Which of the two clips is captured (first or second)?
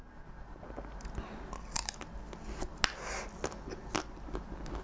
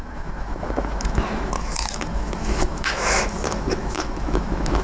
first